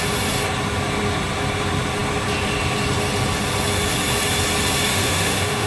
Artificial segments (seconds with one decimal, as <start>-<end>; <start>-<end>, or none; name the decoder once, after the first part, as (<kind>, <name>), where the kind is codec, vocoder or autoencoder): 4.9-5.7 (autoencoder, DAC-VAE)